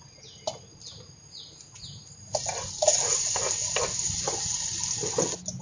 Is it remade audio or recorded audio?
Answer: recorded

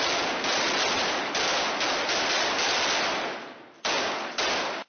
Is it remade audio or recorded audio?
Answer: recorded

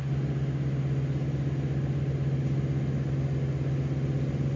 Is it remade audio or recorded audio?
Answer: recorded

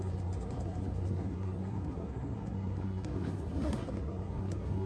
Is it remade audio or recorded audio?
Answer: remade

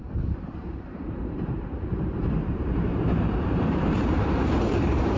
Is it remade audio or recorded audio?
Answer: remade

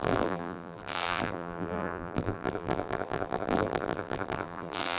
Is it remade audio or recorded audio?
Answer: remade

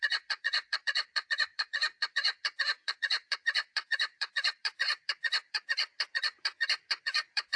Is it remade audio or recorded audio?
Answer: remade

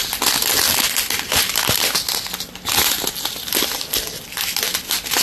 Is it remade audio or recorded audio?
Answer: recorded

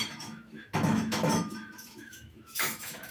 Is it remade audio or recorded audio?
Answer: remade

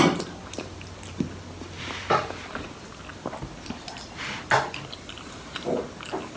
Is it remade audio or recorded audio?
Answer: recorded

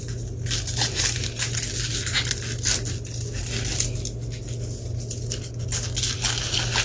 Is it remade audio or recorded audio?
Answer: recorded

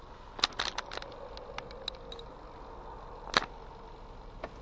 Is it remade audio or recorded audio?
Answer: recorded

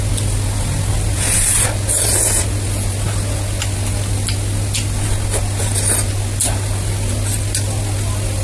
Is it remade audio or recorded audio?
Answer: recorded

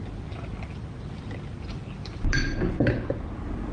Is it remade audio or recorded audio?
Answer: recorded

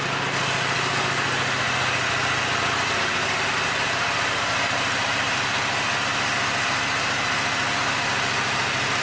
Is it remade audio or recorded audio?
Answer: recorded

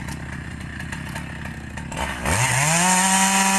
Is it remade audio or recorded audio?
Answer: recorded